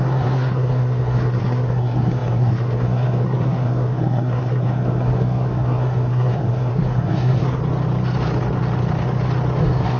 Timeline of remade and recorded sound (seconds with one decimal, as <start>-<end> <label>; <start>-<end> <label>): 0.0-7.6 remade; 7.6-9.6 recorded; 9.6-10.0 remade

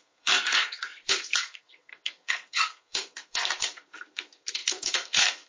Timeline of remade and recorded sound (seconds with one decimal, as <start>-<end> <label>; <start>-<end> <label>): 0.0-5.5 remade

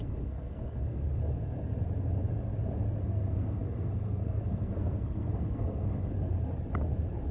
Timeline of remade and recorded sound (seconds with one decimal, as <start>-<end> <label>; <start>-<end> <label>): 0.0-1.2 remade; 1.2-3.0 recorded; 3.0-6.1 remade; 6.1-7.3 recorded

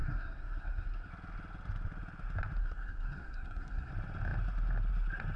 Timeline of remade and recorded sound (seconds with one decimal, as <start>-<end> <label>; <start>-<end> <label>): 0.0-1.1 remade; 1.1-2.6 recorded; 2.6-3.9 remade; 3.9-5.4 recorded